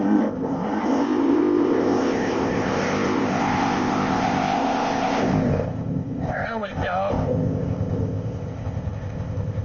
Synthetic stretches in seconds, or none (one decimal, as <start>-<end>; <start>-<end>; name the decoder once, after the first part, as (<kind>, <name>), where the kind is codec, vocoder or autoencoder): 0.0-9.6 (codec, ZipCodec)